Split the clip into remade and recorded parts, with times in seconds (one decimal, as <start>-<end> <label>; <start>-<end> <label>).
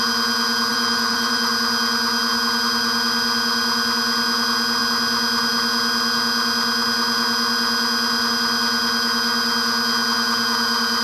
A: 0.0-0.7 recorded; 0.7-1.5 remade; 1.5-11.0 recorded